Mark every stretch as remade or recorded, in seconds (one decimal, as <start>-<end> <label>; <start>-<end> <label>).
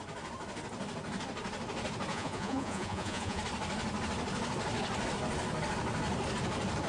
0.0-2.1 recorded; 2.1-3.4 remade; 3.4-6.9 recorded